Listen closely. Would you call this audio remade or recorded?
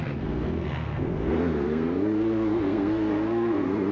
remade